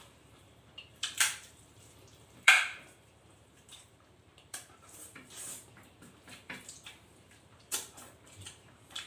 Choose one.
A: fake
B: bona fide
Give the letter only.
A